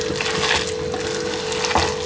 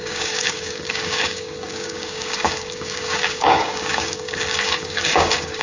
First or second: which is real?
first